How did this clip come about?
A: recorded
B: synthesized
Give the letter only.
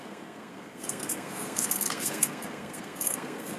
B